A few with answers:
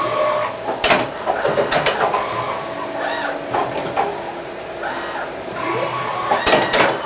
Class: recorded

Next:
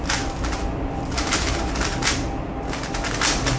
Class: recorded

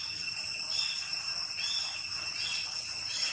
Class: recorded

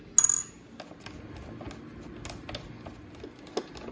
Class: recorded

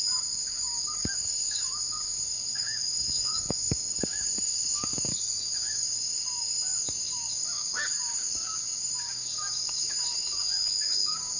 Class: remade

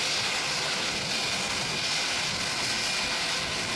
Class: recorded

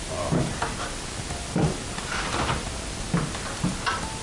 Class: recorded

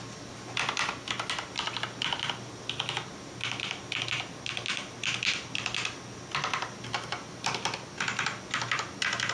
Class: recorded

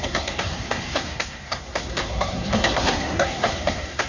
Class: remade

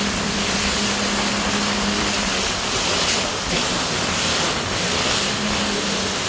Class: recorded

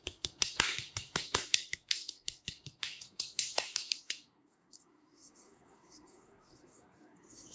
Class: remade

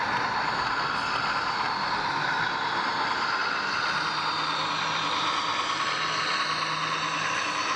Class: recorded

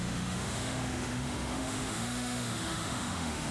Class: remade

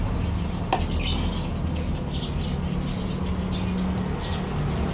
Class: recorded